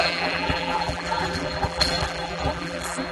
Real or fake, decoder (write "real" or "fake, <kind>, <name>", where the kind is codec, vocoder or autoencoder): fake, vocoder, BigVGAN v2